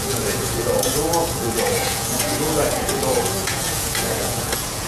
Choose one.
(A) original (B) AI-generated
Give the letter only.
B